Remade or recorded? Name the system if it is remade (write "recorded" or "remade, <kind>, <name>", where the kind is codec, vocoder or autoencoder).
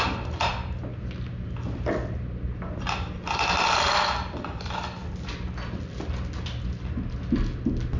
recorded